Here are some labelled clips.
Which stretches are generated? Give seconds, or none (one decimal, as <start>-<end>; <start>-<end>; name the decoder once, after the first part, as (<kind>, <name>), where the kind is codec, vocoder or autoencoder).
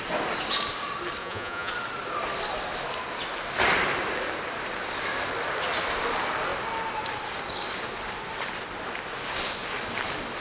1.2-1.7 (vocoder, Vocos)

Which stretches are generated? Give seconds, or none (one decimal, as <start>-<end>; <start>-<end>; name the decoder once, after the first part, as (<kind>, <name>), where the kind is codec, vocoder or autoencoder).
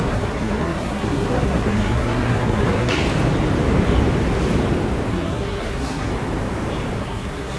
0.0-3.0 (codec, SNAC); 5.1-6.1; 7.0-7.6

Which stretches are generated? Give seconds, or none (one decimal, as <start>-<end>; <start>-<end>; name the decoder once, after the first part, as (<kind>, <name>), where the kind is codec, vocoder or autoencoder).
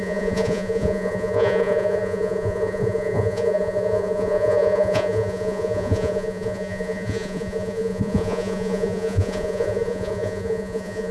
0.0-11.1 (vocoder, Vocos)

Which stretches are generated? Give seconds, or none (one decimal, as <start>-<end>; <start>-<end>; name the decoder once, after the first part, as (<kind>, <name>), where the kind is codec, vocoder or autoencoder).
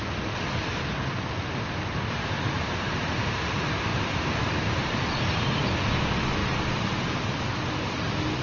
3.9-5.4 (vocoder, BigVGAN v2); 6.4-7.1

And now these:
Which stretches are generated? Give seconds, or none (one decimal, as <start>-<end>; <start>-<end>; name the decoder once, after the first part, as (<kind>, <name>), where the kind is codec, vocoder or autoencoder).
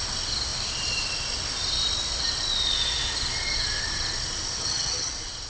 4.6-5.1 (vocoder, HiFi-GAN)